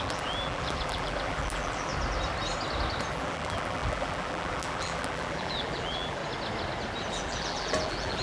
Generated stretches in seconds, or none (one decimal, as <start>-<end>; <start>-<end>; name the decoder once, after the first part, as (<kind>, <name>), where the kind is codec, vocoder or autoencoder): 0.0-1.9 (vocoder, BigVGAN v2); 3.1-6.2; 7.1-8.2